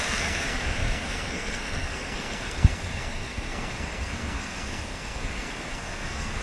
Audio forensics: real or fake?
fake